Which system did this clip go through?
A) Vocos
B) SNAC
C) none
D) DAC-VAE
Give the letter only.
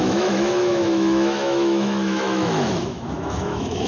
D